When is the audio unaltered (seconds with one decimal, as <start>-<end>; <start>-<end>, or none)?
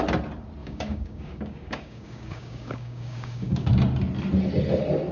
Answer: 0.0-0.6; 3.7-5.1